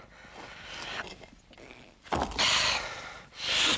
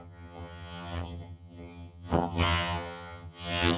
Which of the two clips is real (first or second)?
first